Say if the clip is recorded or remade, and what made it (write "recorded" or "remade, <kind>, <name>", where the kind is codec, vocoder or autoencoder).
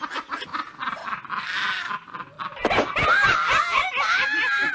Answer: recorded